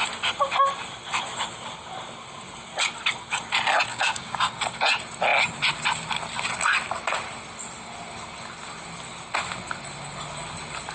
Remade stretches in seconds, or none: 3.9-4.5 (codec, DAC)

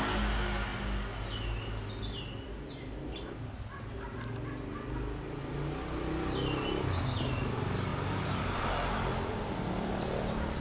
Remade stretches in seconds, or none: none

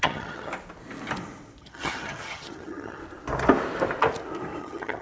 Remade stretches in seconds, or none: 0.0-0.5 (vocoder, HiFi-GAN); 1.6-3.0; 4.6-5.0